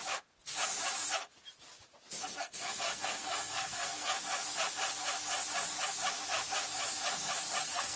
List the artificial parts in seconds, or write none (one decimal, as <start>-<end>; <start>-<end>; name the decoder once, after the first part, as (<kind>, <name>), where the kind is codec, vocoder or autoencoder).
2.2-4.1 (codec, SNAC); 7.6-8.0